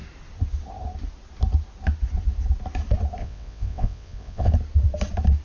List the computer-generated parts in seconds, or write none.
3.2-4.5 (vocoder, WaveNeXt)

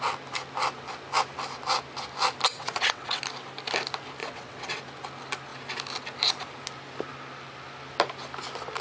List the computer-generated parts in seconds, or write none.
2.5-3.2 (vocoder, WaveNeXt); 4.2-4.8

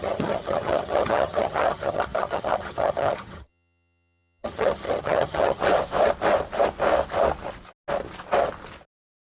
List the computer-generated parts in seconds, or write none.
0.0-5.6 (vocoder, HiFi-GAN)